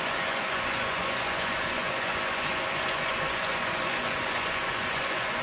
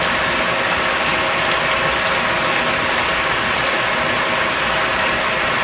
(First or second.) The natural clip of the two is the second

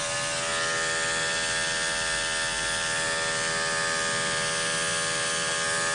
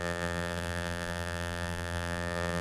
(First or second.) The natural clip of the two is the first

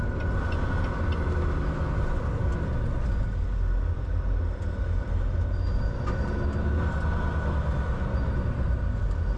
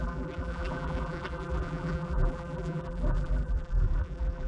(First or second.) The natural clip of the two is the first